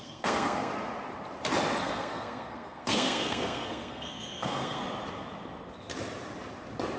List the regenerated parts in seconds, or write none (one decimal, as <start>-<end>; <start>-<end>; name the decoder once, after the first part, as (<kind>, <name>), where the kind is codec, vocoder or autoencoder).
0.0-0.7 (codec, SNAC); 1.8-4.8